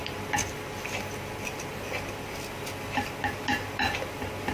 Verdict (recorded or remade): recorded